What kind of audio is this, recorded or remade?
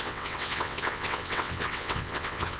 remade